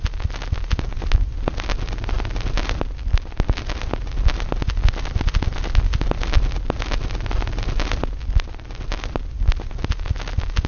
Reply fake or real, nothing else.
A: real